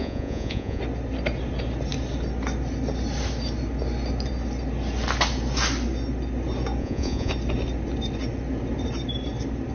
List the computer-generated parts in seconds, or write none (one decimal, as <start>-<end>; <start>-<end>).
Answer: 0.0-0.8; 6.8-7.3